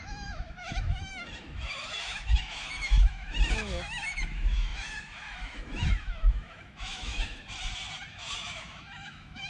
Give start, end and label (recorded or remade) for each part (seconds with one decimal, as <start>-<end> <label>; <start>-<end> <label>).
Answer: 0.0-7.4 remade; 7.4-8.1 recorded; 8.1-9.5 remade